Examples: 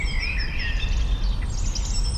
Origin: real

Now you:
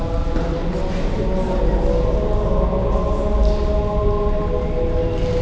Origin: real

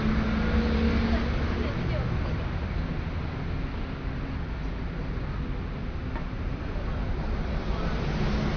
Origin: real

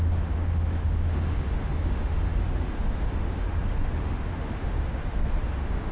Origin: fake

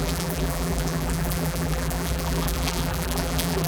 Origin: fake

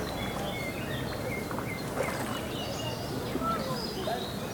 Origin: real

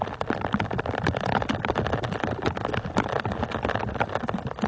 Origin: real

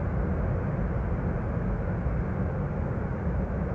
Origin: real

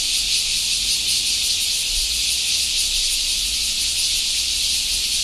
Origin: real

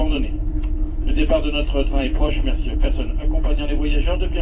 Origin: fake